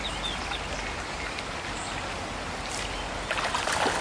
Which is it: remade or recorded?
recorded